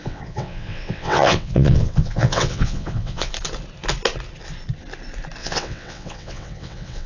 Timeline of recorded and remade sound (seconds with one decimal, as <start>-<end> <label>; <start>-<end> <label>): 0.0-3.3 remade; 3.3-5.4 recorded; 5.4-7.1 remade